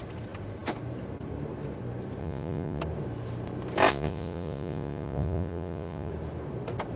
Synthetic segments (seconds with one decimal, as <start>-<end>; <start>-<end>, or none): 2.2-2.8; 3.9-6.1